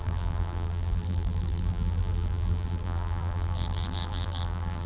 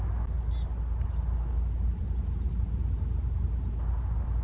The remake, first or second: first